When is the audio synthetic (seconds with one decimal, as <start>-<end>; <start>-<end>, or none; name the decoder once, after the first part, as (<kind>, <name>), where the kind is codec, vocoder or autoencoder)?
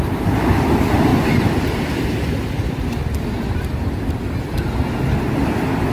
none